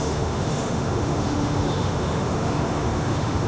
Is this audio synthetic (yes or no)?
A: yes